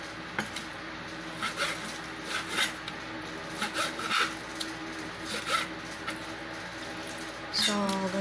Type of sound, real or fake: real